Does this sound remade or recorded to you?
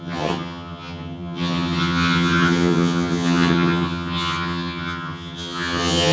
remade